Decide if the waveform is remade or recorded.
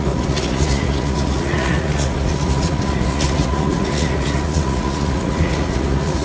remade